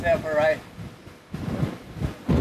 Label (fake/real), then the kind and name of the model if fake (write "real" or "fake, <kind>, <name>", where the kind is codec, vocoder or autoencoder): real